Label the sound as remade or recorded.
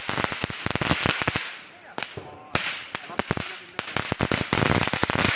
recorded